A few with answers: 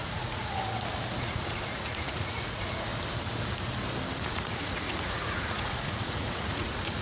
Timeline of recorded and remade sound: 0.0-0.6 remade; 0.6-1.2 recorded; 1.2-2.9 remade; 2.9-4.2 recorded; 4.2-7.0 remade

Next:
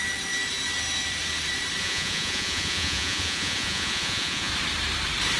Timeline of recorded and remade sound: 0.0-1.8 recorded; 1.8-4.5 remade; 4.5-5.4 recorded